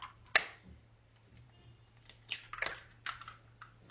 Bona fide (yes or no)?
yes